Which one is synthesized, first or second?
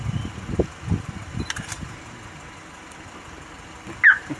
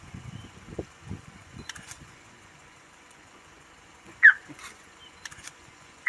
second